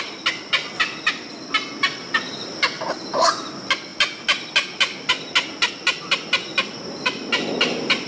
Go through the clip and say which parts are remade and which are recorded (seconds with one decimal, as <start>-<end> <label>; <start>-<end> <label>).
0.0-8.1 recorded